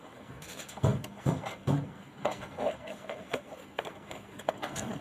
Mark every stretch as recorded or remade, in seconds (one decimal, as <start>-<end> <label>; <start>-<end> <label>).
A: 0.0-5.0 remade